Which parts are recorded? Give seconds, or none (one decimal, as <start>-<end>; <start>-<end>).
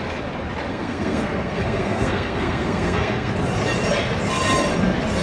0.0-0.7; 3.3-5.2